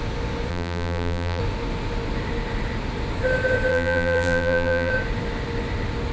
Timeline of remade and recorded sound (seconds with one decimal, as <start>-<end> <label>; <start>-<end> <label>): 0.0-0.5 recorded; 0.5-1.4 remade; 1.4-3.7 recorded; 3.7-4.9 remade; 4.9-6.1 recorded